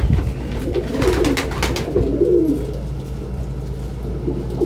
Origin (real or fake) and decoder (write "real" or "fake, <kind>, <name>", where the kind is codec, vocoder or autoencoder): real